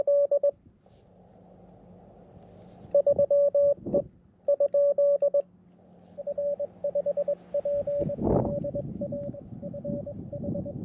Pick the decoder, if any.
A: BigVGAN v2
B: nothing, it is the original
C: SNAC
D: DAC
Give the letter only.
B